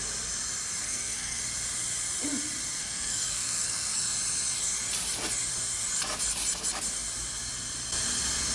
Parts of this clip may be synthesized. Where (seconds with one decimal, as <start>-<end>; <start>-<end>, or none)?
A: 0.8-1.4; 2.8-4.0